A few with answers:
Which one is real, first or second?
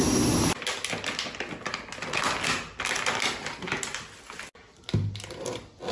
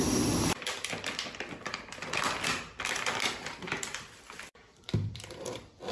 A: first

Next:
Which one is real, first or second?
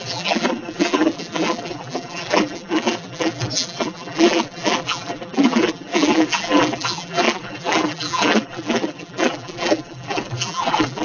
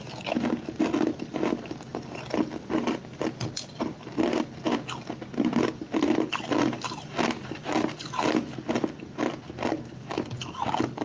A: second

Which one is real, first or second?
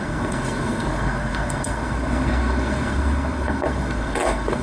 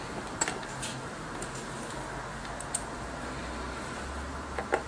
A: second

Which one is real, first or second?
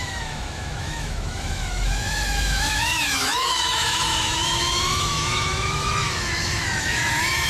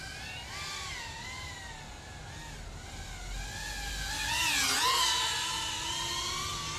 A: second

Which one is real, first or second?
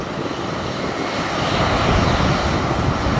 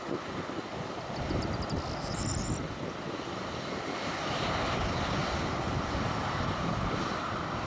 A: first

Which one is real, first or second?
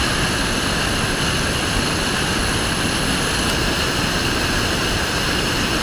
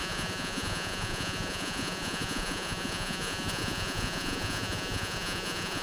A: first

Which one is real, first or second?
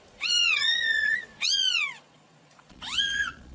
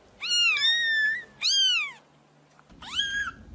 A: second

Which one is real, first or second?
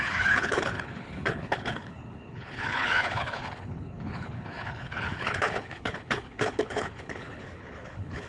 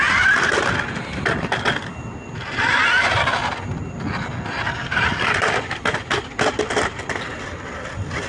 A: second